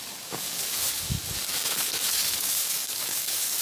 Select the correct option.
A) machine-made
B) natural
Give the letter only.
A